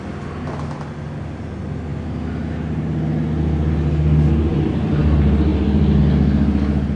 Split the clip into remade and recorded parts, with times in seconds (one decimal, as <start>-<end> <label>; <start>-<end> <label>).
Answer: 0.0-4.5 recorded; 4.5-5.0 remade; 5.0-5.5 recorded; 5.5-6.0 remade; 6.0-7.0 recorded